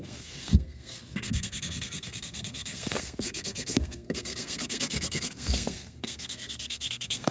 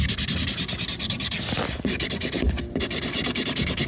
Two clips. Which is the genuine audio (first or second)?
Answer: second